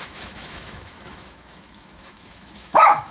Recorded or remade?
remade